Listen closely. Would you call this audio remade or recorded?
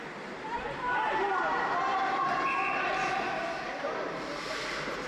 remade